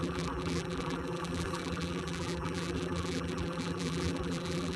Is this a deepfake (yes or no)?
yes